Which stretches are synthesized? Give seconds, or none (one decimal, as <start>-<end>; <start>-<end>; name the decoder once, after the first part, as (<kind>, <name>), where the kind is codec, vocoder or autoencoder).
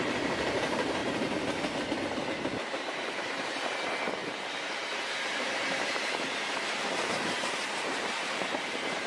0.0-1.0 (vocoder, BigVGAN v2); 2.0-9.1